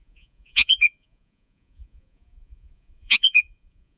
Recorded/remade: remade